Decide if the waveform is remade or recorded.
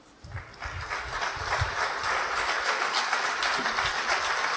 remade